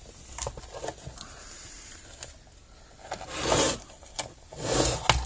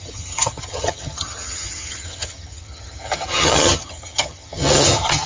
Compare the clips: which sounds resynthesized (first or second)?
second